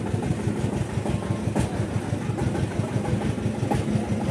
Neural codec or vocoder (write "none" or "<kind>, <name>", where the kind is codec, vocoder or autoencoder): none